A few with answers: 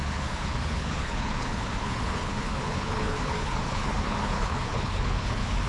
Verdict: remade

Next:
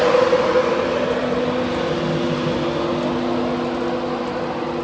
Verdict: recorded